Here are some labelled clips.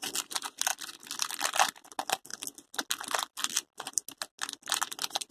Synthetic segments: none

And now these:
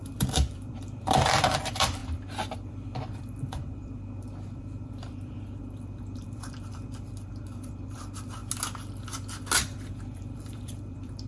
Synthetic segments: 0.0-2.0 (vocoder, BigVGAN v2); 2.7-8.4; 9.9-11.3

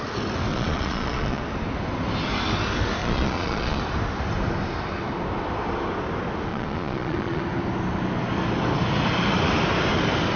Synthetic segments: 0.5-1.4 (vocoder, Vocos); 3.0-3.8; 6.5-7.4

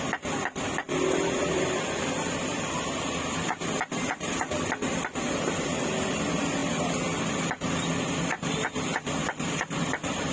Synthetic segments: none